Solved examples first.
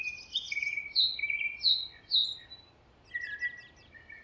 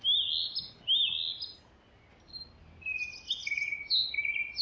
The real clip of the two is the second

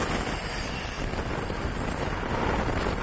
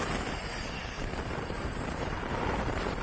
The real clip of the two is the first